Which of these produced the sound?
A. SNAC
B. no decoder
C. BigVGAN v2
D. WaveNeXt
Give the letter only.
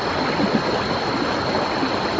B